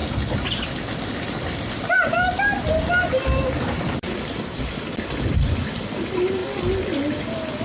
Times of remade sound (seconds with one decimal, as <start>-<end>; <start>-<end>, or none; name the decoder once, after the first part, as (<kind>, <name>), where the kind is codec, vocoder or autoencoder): 1.4-2.5 (vocoder, BigVGAN v2); 3.8-6.4